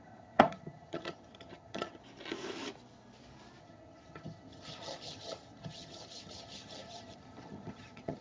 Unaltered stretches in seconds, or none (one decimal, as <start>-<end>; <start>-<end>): 2.0-3.6